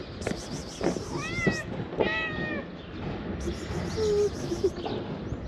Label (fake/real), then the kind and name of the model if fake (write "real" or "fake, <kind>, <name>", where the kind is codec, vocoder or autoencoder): real